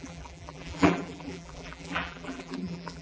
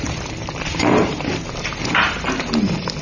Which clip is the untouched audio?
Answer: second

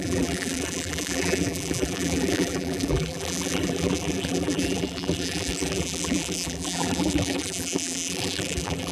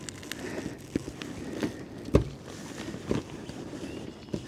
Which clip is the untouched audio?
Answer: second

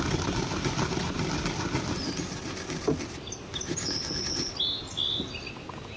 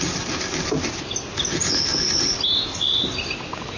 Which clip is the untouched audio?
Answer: first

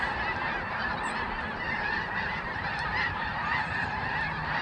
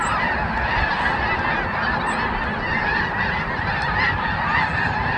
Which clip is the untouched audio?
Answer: second